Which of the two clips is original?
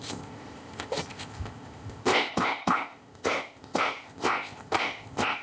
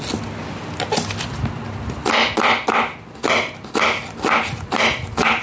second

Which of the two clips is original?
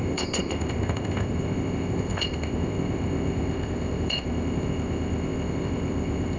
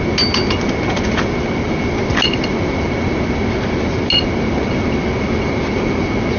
second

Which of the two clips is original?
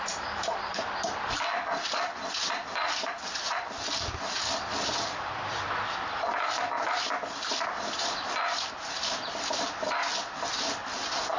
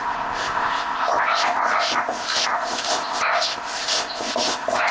first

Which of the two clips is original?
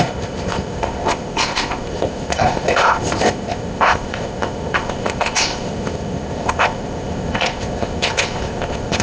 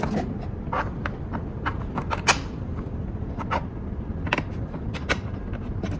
second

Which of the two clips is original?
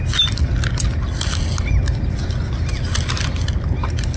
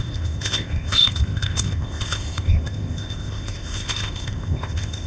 first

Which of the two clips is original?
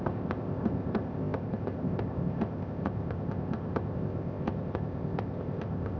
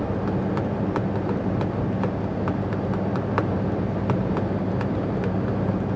second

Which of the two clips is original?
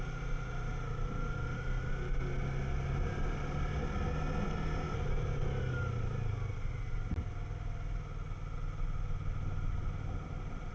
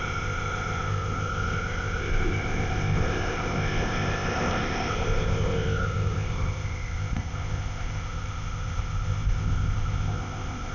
first